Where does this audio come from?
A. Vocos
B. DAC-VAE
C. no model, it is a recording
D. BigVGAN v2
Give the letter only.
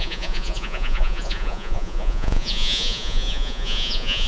A